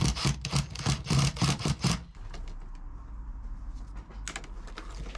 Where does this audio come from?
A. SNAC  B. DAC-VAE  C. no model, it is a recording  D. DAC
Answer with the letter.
C